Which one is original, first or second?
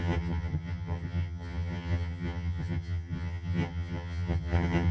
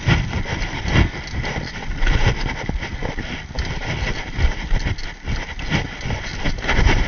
second